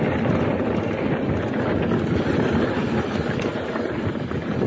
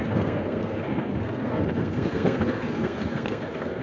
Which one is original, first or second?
first